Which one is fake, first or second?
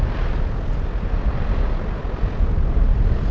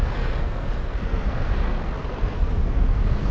second